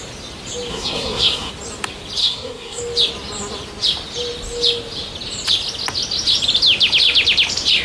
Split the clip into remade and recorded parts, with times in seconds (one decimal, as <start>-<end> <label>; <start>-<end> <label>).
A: 0.0-0.7 recorded; 0.7-1.5 remade; 1.5-2.2 recorded; 2.2-2.8 remade; 2.8-7.8 recorded